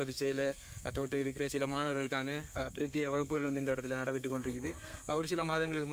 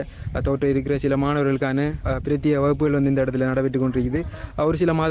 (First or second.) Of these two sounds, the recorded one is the second